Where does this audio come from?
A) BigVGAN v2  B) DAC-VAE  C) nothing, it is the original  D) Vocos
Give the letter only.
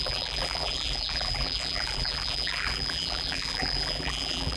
A